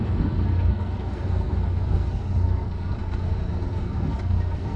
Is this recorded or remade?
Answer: remade